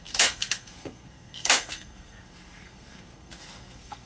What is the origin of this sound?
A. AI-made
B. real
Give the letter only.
A